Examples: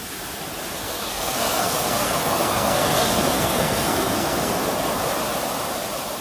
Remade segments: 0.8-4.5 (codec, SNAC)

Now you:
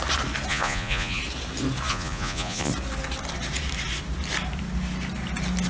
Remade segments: 0.5-1.2 (vocoder, Vocos); 1.9-2.7

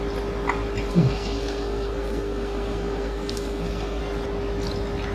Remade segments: 0.9-4.0 (codec, SNAC)

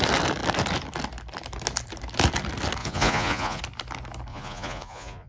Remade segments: 2.8-3.6 (vocoder, Vocos); 4.3-5.3